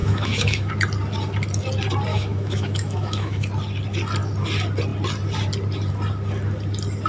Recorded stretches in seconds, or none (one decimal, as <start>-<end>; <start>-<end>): 0.7-2.1; 3.5-7.1